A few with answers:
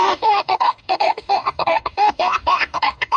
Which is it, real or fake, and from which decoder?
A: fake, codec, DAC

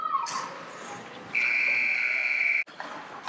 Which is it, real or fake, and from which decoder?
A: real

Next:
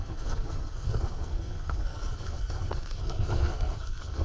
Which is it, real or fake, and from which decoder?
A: fake, codec, SNAC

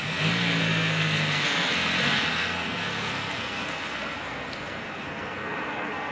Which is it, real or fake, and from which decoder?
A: fake, codec, SNAC